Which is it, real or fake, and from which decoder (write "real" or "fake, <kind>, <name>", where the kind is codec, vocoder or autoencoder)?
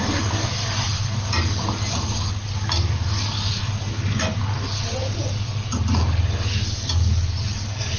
real